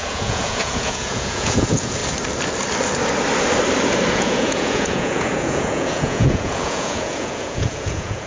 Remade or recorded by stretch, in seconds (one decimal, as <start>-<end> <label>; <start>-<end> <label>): 0.0-2.0 remade; 2.0-4.1 recorded; 4.1-8.3 remade